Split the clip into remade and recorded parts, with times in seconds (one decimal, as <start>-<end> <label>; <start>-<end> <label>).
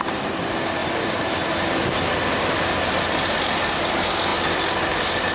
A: 0.0-5.3 recorded